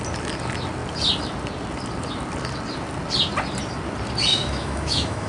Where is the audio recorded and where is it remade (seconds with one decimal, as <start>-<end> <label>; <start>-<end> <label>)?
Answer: 0.0-4.3 recorded; 4.3-5.3 remade